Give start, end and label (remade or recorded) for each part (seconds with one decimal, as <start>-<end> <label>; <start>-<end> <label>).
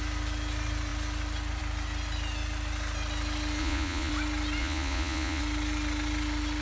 0.0-3.6 recorded; 3.6-4.1 remade; 4.1-4.6 recorded; 4.6-5.4 remade; 5.4-6.6 recorded